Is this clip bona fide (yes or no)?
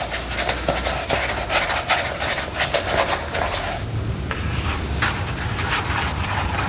yes